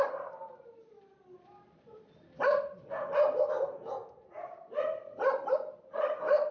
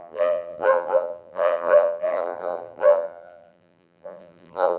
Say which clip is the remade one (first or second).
second